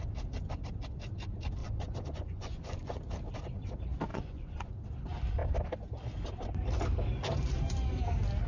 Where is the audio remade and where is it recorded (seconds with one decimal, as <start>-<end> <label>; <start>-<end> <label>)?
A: 0.0-1.6 recorded; 1.6-3.0 remade; 3.0-4.1 recorded; 4.1-4.7 remade; 4.7-8.5 recorded